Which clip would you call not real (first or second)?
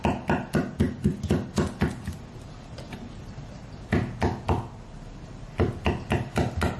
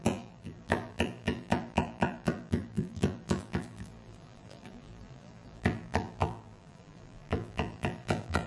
second